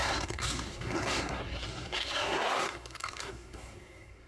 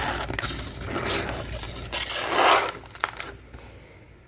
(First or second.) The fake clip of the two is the first